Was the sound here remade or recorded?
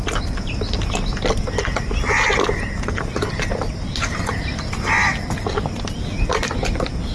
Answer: recorded